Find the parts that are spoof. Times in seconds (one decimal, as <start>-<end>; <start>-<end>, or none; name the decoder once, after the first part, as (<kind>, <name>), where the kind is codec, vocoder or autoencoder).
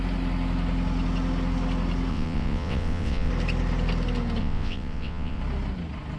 2.1-3.3 (vocoder, WaveNeXt); 4.4-5.4